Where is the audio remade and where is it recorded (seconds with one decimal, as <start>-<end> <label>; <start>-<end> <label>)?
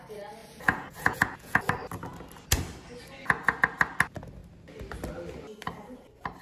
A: 0.0-0.4 recorded; 0.4-1.6 remade; 1.6-6.4 recorded